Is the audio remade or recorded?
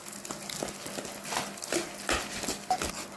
recorded